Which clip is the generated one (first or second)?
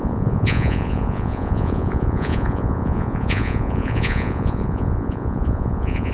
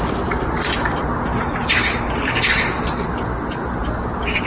first